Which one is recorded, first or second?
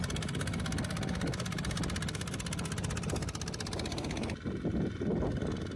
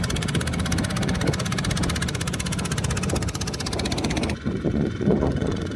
first